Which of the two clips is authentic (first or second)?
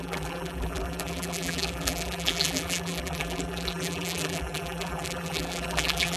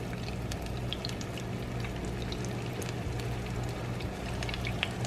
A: second